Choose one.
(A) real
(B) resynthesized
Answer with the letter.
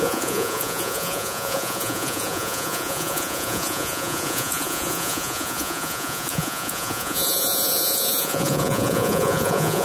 B